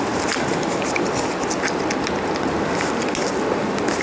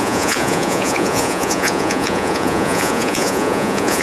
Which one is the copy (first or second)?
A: second